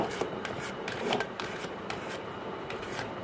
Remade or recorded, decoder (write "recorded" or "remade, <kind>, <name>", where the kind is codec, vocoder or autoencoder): remade, vocoder, BigVGAN v2